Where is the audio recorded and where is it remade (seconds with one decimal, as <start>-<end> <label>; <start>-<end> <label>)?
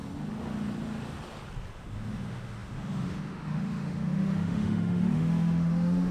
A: 0.0-1.7 recorded; 1.7-6.1 remade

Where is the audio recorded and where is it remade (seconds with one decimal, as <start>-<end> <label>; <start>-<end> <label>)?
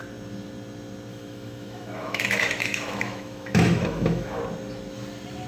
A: 0.0-1.1 recorded; 1.1-4.4 remade; 4.4-5.5 recorded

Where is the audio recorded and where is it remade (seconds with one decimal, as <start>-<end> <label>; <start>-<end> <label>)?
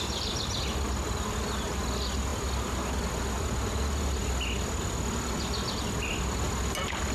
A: 0.0-7.1 recorded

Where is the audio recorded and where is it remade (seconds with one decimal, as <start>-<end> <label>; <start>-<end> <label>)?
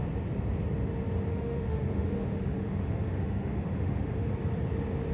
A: 0.0-1.3 recorded; 1.3-4.3 remade; 4.3-5.1 recorded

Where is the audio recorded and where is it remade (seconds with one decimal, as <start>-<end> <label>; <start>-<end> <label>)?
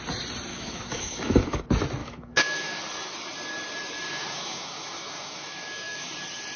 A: 0.0-0.5 recorded; 0.5-1.6 remade; 1.6-2.0 recorded; 2.0-2.8 remade; 2.8-4.1 recorded; 4.1-6.1 remade; 6.1-6.6 recorded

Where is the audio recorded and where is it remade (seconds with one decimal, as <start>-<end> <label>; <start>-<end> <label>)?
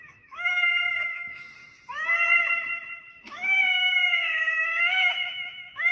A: 0.0-1.6 remade; 1.6-3.0 recorded; 3.0-5.9 remade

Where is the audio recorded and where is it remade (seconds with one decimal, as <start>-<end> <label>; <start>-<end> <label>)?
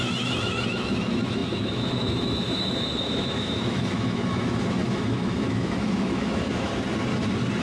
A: 0.0-6.7 remade; 6.7-7.6 recorded